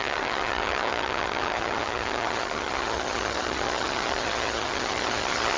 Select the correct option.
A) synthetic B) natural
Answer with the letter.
A